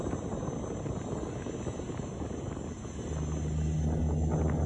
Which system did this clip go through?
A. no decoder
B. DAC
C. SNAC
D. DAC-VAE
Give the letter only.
A